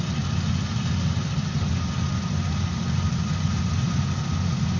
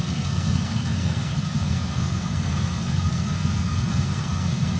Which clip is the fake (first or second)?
second